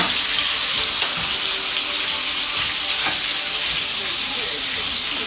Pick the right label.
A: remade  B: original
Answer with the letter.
B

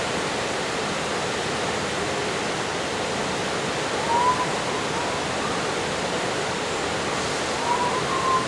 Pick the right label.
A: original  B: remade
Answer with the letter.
A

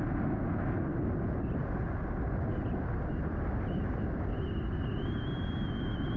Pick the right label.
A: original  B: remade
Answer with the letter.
A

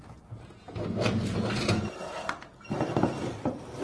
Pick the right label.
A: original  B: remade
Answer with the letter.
A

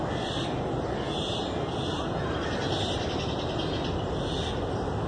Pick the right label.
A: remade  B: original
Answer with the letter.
B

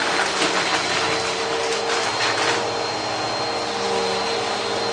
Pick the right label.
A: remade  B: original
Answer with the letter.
B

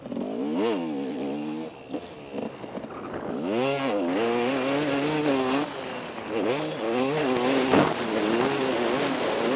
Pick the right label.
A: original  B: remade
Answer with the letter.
A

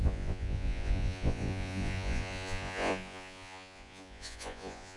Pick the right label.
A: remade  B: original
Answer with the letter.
A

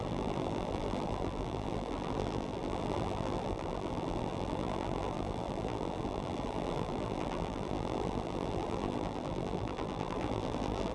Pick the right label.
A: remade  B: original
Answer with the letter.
A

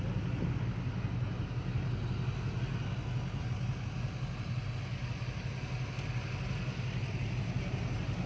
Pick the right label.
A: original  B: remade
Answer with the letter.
A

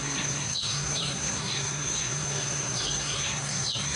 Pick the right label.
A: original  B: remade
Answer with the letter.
B